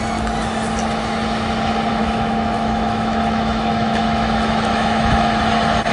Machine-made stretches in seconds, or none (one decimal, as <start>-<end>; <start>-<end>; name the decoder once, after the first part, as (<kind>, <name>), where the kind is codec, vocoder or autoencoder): 1.9-5.4 (autoencoder, DAC-VAE)